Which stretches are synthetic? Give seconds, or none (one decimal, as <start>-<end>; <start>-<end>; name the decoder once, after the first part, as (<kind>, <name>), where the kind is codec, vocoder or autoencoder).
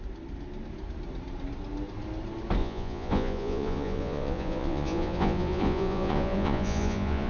2.6-7.3 (vocoder, Vocos)